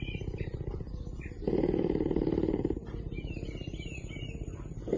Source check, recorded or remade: recorded